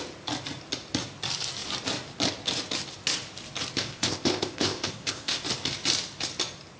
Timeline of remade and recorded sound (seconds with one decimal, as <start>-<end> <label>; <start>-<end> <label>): 0.0-3.8 recorded; 3.8-5.4 remade; 5.4-6.8 recorded